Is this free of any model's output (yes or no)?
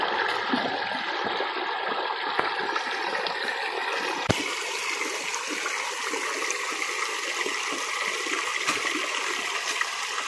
yes